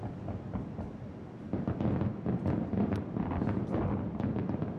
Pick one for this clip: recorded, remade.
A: recorded